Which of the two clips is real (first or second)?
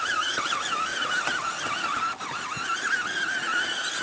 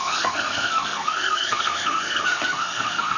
first